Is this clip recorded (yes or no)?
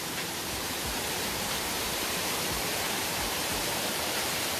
no